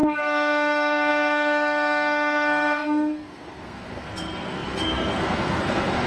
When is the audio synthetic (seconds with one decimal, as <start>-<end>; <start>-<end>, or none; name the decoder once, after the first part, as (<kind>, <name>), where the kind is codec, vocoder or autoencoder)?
0.0-6.1 (codec, SNAC)